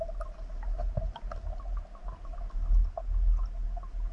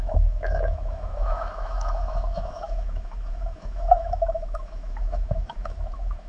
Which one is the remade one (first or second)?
second